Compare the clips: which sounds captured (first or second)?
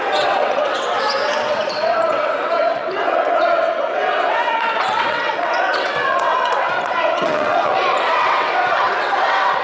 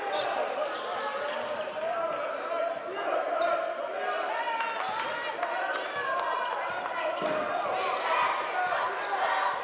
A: second